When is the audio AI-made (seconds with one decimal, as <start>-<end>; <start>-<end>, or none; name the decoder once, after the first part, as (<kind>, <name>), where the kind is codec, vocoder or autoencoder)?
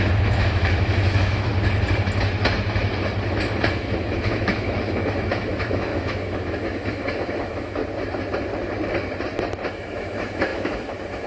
0.0-1.5 (autoencoder, DAC-VAE); 3.7-7.8; 9.7-11.3